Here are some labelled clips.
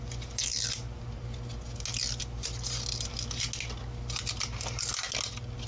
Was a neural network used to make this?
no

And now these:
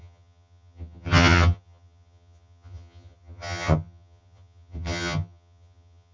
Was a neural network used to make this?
yes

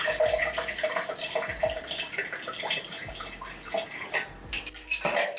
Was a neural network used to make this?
no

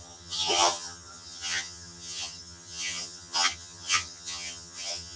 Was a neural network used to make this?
yes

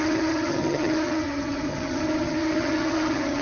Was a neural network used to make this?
yes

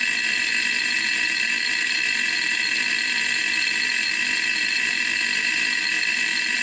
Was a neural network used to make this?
no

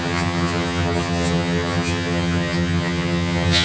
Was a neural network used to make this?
yes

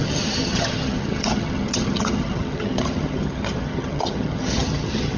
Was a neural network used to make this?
yes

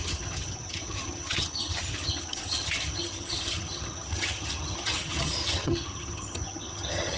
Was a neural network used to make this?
yes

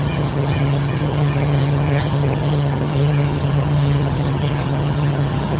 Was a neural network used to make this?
yes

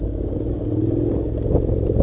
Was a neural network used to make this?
no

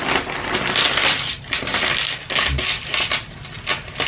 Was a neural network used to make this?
no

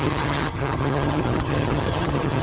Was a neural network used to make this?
yes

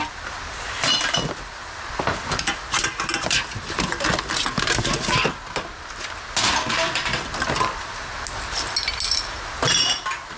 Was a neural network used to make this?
no